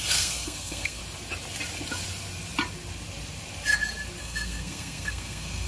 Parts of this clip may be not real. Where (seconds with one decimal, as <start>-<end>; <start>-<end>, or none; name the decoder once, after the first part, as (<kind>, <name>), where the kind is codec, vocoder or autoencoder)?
0.0-1.0 (codec, SNAC); 4.2-5.7